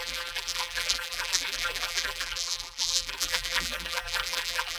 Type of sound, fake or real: fake